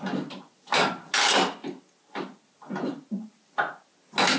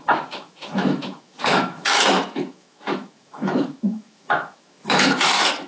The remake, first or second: second